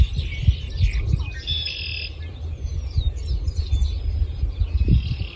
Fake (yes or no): no